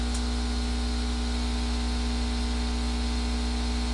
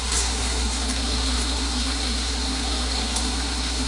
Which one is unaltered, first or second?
first